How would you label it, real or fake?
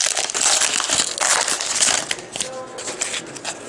real